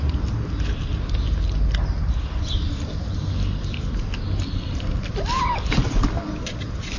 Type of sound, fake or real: real